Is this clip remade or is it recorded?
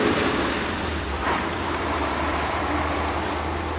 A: remade